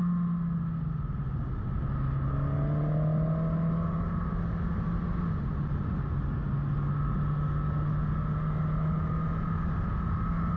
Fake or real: real